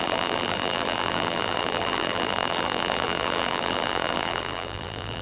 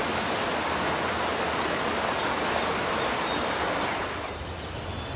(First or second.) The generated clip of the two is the first